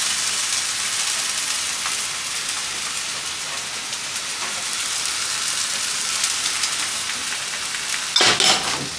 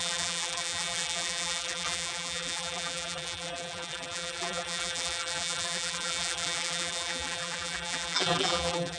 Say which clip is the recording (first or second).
first